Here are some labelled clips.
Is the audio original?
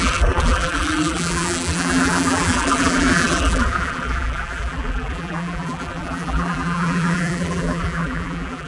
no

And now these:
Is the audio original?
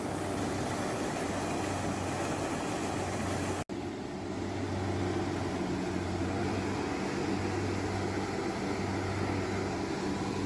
yes